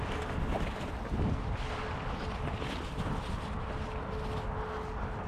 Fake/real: real